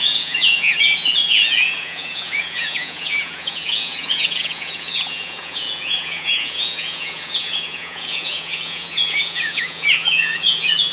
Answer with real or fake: fake